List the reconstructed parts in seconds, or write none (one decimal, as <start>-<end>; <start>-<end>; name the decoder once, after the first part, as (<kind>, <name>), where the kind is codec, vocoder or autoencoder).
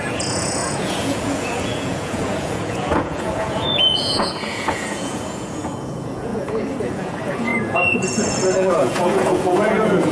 0.0-10.1 (vocoder, Vocos)